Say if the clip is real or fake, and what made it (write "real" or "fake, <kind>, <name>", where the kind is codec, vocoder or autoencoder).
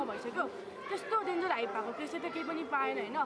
real